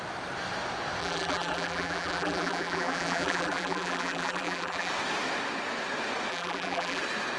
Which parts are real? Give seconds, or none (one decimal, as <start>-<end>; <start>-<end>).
0.0-1.0; 4.9-6.3; 7.0-7.4